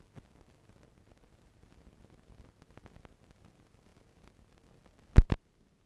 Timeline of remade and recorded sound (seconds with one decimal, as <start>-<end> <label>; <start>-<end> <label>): 0.0-5.9 recorded